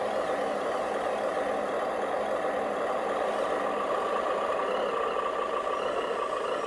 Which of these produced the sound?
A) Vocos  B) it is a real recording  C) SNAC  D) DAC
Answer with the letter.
B